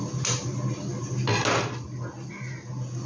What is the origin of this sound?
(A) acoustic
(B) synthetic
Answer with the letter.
A